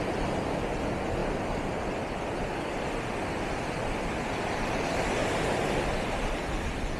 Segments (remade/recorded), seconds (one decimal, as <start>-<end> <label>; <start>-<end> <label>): 0.0-7.0 recorded